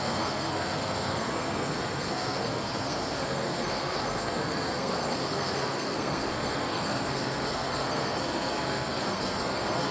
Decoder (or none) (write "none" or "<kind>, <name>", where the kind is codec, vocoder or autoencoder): codec, SNAC